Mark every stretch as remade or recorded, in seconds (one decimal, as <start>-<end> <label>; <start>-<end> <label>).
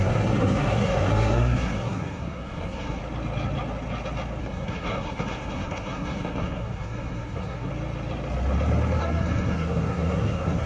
0.0-3.0 remade; 3.0-4.4 recorded; 4.4-7.7 remade; 7.7-9.0 recorded; 9.0-10.7 remade